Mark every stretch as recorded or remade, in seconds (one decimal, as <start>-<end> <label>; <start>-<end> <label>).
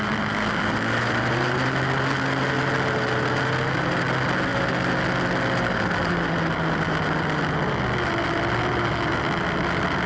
0.0-10.1 recorded